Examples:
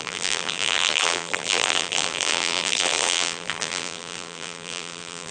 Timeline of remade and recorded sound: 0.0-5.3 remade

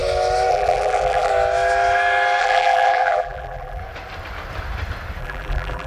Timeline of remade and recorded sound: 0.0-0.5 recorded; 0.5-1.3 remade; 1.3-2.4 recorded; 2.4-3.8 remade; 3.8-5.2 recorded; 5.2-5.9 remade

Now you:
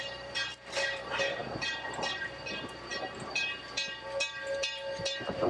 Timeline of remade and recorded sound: 0.0-5.5 remade